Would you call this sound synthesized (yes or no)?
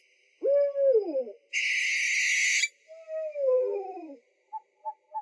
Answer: no